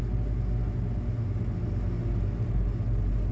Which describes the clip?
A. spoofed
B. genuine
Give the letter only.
B